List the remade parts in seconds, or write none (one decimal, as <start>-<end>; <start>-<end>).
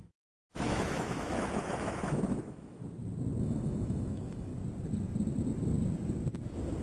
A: 0.0-2.8; 3.4-4.5